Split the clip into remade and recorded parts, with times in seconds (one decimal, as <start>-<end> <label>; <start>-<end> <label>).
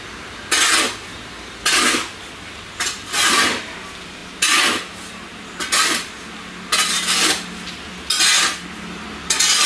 0.0-9.7 recorded